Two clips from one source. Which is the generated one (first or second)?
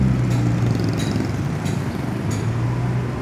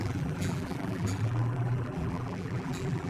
second